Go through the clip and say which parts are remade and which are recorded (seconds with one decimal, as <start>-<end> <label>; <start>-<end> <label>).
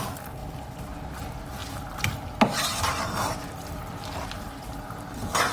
0.0-5.5 recorded